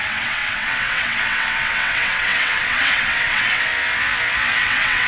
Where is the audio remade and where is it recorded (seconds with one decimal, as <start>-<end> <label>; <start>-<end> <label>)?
0.0-3.7 remade; 3.7-4.6 recorded; 4.6-5.1 remade